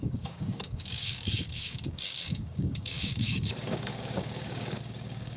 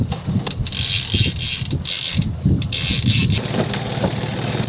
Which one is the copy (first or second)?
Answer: first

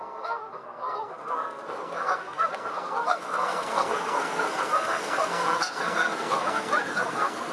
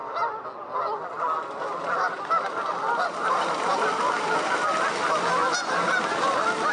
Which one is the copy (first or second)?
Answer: first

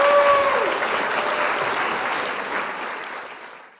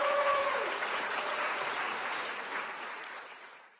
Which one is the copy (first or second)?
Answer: second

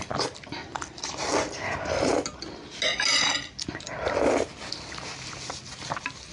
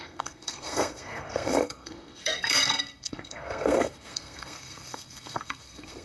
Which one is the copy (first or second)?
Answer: second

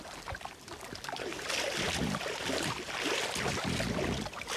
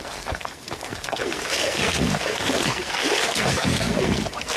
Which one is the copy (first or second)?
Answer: second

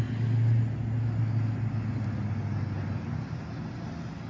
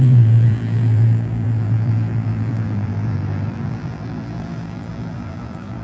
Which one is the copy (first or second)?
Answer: second